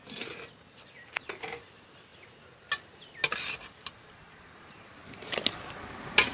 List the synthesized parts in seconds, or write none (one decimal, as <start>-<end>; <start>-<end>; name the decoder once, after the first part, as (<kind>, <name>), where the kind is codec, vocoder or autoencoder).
none